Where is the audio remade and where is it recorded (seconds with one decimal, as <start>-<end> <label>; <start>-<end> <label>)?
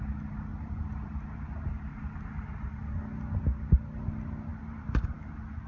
0.0-0.5 recorded; 0.5-1.1 remade; 1.1-4.5 recorded; 4.5-5.3 remade; 5.3-5.7 recorded